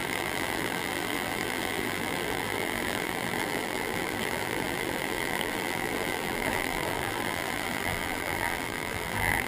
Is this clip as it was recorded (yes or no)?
no